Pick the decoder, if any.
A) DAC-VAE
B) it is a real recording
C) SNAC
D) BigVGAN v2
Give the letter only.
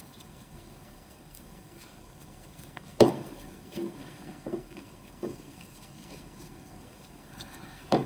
C